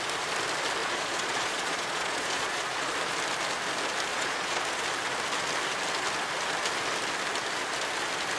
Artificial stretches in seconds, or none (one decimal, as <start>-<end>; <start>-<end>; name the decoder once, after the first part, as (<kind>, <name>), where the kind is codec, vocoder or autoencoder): 0.8-2.9 (vocoder, Vocos); 4.1-4.6